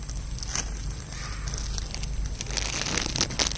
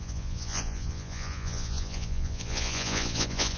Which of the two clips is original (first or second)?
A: first